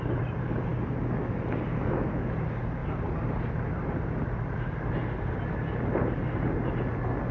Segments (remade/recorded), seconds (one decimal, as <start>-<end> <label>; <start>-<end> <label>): 0.0-1.7 recorded; 1.7-2.3 remade; 2.3-7.3 recorded